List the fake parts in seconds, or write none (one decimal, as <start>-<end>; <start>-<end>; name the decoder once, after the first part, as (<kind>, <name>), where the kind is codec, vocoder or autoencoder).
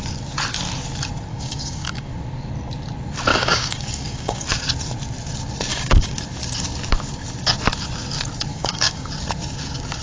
1.3-2.1 (codec, DAC); 3.3-4.5; 5.7-6.2; 8.5-9.1